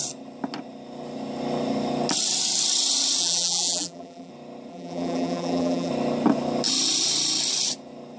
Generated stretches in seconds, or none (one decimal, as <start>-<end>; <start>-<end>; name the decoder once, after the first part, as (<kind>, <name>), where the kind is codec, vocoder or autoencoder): 3.2-4.3 (vocoder, BigVGAN v2); 4.7-5.9